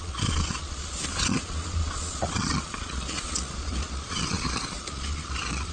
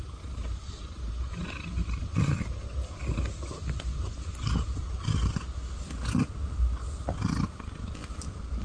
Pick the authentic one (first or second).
second